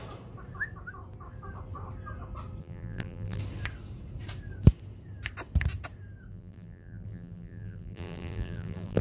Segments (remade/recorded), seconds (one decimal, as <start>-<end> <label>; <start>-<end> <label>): 0.0-2.6 recorded; 2.6-3.4 remade; 3.4-6.3 recorded; 6.3-9.0 remade